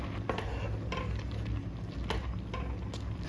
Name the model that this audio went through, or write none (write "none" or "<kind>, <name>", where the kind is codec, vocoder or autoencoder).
none